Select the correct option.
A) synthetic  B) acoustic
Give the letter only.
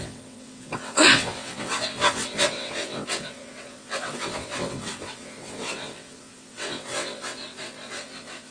A